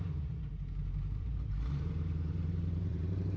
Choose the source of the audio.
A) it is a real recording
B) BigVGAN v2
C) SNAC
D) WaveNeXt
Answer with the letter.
B